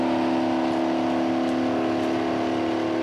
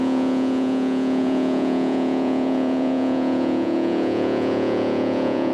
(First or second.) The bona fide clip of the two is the first